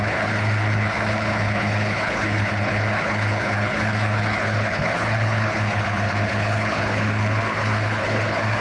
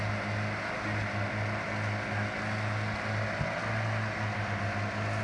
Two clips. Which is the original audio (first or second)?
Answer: second